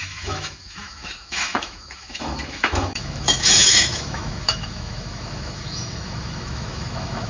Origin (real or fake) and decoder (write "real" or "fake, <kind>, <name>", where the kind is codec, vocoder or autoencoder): fake, autoencoder, DAC-VAE